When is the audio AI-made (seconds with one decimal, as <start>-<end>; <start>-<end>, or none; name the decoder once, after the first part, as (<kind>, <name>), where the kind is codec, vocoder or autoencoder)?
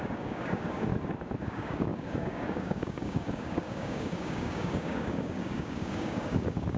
0.0-0.9 (codec, DAC); 1.4-6.8